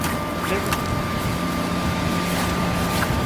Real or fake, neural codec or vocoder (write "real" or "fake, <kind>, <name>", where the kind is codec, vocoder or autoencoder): real